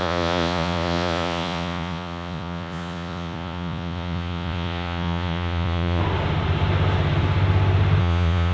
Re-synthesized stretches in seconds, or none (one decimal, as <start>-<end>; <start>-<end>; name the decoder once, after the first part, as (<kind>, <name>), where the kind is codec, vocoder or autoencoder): 0.0-6.0 (vocoder, Vocos); 8.0-8.5